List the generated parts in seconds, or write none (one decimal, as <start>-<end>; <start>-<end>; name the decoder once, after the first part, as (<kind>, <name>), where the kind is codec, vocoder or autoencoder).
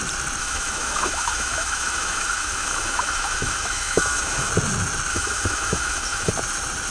0.4-4.5 (autoencoder, DAC-VAE); 5.1-6.3